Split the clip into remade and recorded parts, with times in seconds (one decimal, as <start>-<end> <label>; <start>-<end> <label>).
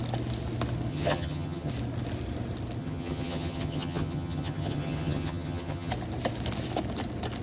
0.0-0.9 recorded; 0.9-1.7 remade; 1.7-2.8 recorded; 2.8-5.9 remade; 5.9-7.4 recorded